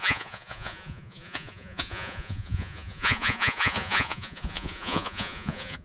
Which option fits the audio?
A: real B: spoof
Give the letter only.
B